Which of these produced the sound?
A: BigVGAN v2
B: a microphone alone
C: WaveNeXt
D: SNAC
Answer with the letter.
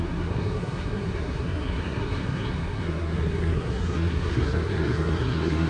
D